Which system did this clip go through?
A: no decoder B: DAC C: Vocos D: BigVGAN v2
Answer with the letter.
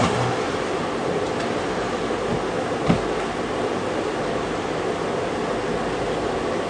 A